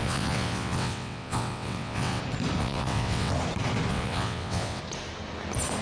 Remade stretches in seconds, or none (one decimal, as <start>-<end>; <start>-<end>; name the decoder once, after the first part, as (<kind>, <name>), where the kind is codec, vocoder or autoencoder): 0.0-2.2 (vocoder, WaveNeXt); 2.6-3.3; 3.9-4.8